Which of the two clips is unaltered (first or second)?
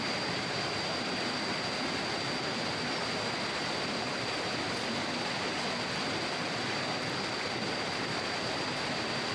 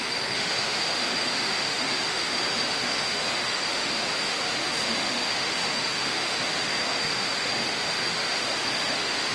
first